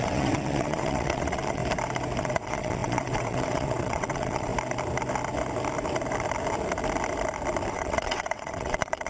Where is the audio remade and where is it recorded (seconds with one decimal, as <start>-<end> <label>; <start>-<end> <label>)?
0.0-1.6 remade; 1.6-2.2 recorded; 2.2-4.5 remade; 4.5-7.7 recorded; 7.7-9.1 remade